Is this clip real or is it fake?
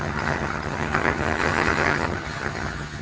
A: fake